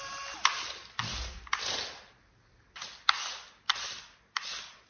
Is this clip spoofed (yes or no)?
no